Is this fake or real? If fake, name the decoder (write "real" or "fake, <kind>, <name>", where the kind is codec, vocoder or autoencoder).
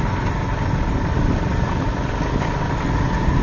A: real